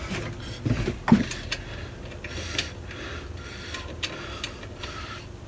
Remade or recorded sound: recorded